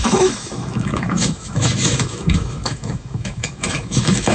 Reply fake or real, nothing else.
fake